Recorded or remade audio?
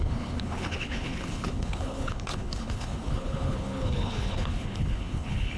remade